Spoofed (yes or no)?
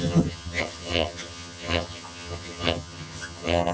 yes